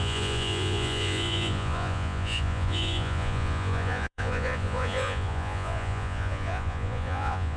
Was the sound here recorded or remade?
remade